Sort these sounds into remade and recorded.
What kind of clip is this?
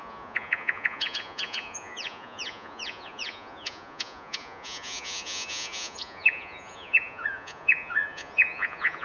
remade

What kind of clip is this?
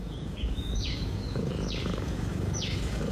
remade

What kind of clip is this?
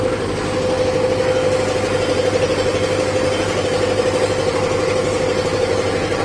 recorded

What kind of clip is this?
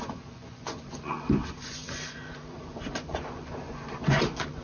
remade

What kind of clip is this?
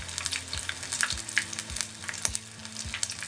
recorded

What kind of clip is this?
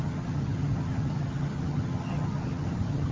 remade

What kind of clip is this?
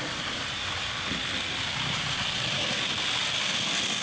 recorded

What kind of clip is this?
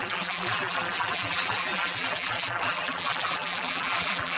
remade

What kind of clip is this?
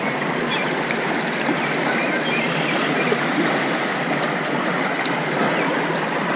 recorded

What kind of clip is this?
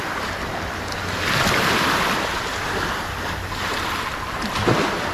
recorded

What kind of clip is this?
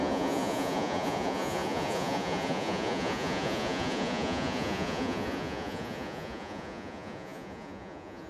remade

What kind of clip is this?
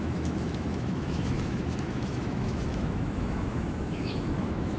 remade